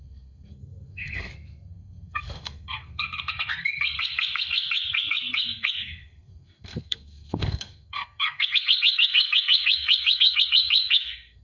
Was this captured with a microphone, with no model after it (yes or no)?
no